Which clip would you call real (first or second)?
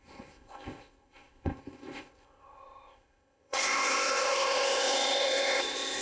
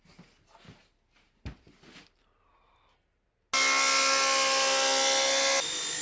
second